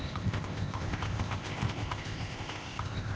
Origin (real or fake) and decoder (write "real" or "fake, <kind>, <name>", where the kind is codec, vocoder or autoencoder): fake, codec, ZipCodec